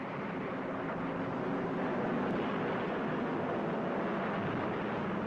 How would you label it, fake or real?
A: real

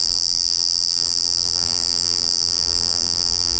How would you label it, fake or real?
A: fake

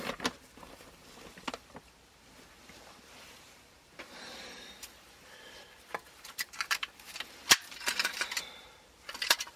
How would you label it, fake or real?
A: fake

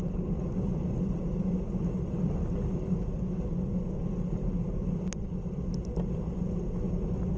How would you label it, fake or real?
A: real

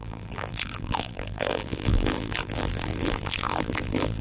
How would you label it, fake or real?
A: fake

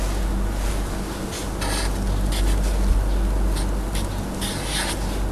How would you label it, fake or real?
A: real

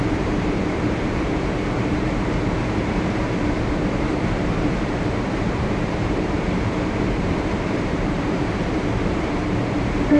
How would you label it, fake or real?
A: fake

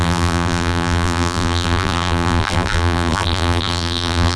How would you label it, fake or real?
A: fake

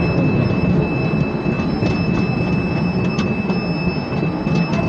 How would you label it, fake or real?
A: real